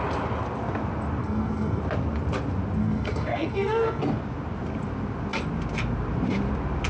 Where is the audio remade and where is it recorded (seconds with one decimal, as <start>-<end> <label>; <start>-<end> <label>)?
0.0-1.2 recorded; 1.2-1.8 remade; 1.8-2.8 recorded; 2.8-4.0 remade; 4.0-6.9 recorded